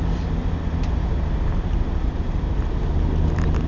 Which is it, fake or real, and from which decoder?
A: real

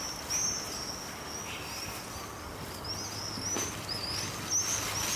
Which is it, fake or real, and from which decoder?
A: real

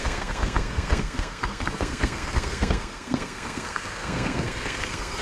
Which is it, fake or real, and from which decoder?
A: fake, codec, SNAC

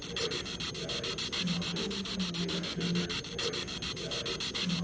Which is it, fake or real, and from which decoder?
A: real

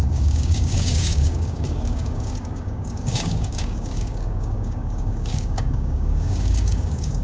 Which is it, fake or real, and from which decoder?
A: fake, codec, DAC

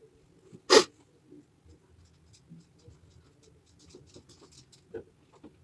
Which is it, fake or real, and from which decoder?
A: real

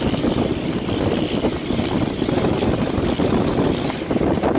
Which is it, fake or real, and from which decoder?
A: real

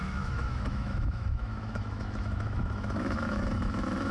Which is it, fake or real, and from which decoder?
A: fake, autoencoder, DAC-VAE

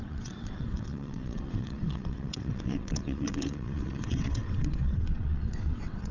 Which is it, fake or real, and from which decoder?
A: fake, vocoder, WaveNeXt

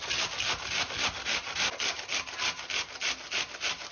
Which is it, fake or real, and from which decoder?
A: real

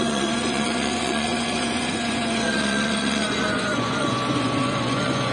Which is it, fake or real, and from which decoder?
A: fake, vocoder, Vocos